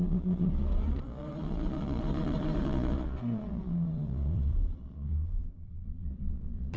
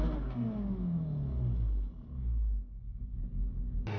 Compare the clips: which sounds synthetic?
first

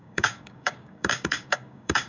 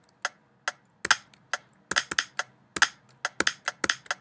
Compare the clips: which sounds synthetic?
first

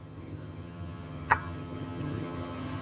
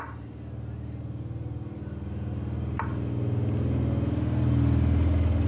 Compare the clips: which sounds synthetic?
first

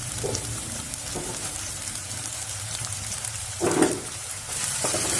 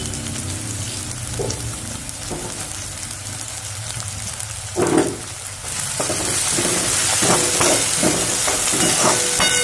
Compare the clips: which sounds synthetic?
first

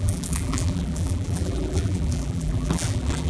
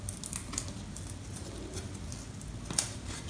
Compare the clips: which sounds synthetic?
first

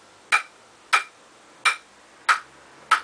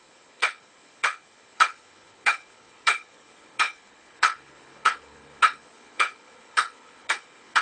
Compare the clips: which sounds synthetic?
second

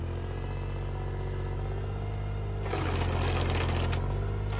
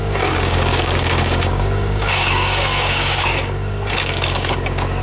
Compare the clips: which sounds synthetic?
second